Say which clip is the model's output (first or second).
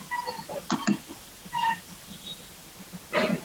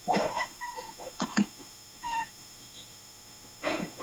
second